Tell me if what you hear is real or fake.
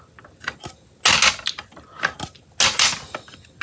real